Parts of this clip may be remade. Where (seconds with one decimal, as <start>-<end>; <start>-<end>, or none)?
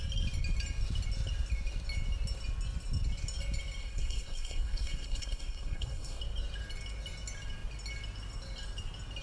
3.8-6.2